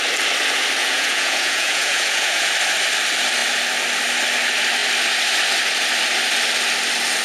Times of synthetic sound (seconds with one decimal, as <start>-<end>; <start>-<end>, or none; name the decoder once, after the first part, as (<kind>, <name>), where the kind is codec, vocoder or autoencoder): 0.8-2.5 (vocoder, Vocos)